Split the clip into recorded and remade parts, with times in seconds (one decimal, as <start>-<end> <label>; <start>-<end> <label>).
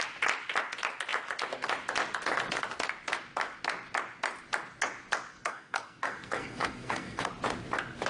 0.0-5.3 recorded; 5.3-7.3 remade; 7.3-8.1 recorded